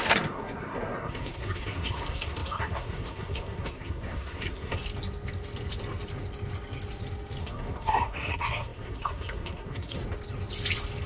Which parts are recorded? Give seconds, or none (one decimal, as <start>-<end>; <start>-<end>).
4.8-7.4; 10.0-11.1